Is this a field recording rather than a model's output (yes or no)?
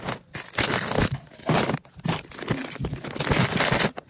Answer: yes